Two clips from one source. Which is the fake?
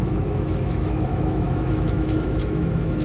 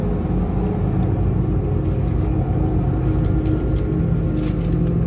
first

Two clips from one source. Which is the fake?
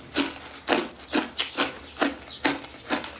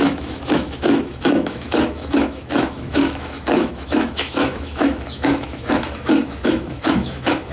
second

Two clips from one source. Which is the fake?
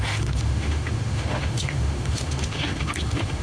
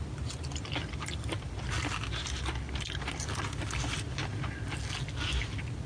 first